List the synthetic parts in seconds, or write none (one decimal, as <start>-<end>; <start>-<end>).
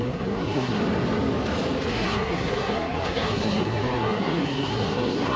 0.0-0.8; 1.9-5.4